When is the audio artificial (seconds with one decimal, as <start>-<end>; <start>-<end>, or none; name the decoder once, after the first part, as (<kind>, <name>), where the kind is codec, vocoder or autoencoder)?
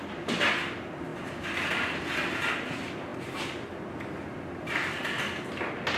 none